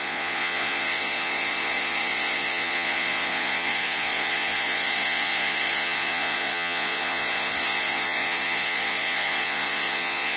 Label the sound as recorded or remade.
remade